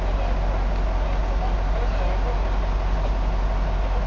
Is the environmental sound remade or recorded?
recorded